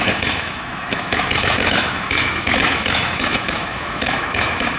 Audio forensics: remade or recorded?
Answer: remade